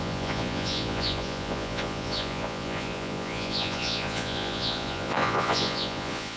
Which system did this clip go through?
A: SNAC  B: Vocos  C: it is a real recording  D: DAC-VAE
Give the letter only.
B